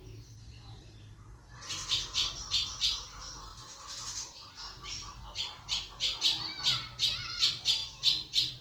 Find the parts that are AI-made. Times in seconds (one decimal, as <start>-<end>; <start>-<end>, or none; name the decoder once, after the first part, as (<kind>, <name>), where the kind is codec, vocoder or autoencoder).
none